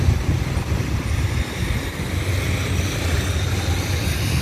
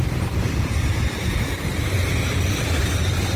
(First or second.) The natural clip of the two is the first